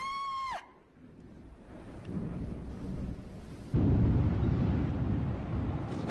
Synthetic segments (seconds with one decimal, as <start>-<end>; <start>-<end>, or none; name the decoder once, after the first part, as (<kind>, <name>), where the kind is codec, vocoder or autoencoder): 0.7-2.4 (vocoder, BigVGAN v2)